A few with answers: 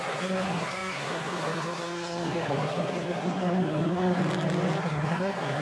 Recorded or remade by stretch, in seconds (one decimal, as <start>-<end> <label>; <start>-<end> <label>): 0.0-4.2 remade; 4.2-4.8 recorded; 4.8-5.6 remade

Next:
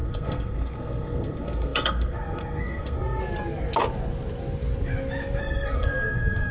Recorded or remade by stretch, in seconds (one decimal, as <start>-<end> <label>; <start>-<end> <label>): 0.0-3.2 remade; 3.2-5.4 recorded; 5.4-6.5 remade

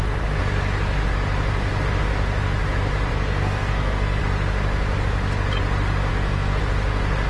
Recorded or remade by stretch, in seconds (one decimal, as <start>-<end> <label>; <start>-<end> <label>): 0.0-3.1 recorded; 3.1-4.2 remade; 4.2-6.1 recorded; 6.1-6.6 remade; 6.6-7.3 recorded

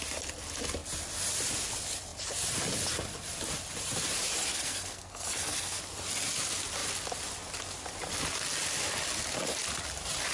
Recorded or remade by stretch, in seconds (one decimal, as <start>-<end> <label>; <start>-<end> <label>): 0.0-4.5 recorded; 4.5-5.8 remade; 5.8-10.3 recorded

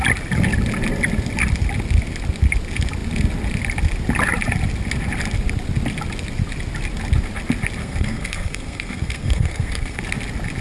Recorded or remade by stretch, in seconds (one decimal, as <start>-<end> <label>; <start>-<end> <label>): 0.0-7.8 recorded; 7.8-10.0 remade; 10.0-10.6 recorded